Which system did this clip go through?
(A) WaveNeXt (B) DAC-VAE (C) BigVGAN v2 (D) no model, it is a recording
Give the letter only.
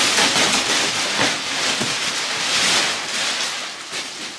D